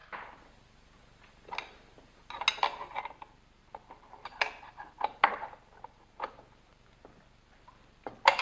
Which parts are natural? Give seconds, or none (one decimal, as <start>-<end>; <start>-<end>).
0.0-8.4